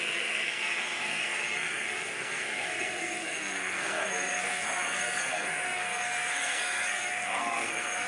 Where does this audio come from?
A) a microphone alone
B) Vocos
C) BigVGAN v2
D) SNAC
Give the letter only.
D